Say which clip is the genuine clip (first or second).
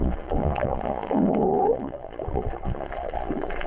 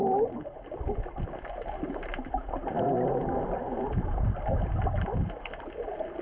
second